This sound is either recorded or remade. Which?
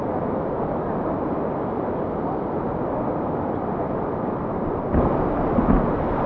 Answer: recorded